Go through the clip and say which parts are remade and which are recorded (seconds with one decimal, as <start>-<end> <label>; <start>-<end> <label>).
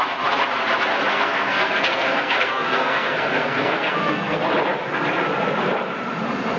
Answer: 0.0-1.1 recorded; 1.1-4.4 remade; 4.4-6.6 recorded